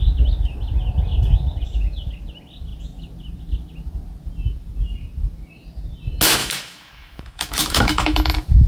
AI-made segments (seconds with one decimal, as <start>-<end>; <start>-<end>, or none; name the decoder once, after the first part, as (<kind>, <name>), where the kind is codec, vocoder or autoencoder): 6.4-8.7 (autoencoder, DAC-VAE)